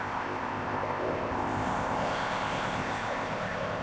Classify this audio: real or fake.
fake